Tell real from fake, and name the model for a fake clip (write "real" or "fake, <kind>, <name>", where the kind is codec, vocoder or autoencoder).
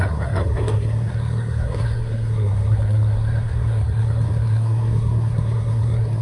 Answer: fake, codec, SNAC